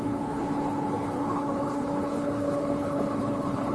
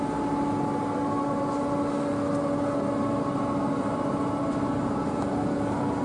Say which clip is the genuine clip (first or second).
second